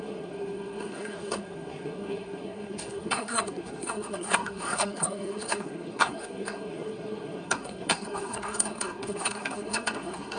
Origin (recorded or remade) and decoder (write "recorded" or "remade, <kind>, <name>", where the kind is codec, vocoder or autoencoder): remade, codec, SNAC